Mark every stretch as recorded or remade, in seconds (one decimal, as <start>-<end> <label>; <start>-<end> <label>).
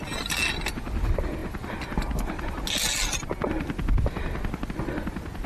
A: 0.0-5.5 recorded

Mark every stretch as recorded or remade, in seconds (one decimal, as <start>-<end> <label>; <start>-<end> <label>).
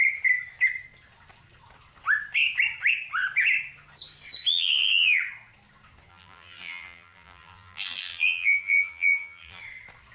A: 0.0-4.5 recorded; 4.5-5.2 remade; 5.2-6.1 recorded; 6.1-9.6 remade; 9.6-10.1 recorded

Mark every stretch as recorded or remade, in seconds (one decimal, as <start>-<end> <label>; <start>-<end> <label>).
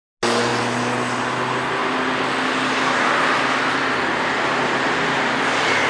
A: 0.0-5.9 recorded